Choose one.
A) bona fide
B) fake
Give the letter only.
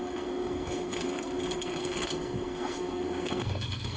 B